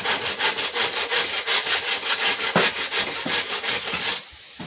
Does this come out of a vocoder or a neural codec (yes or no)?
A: no